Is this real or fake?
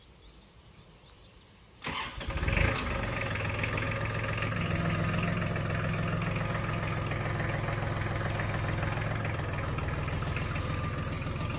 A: real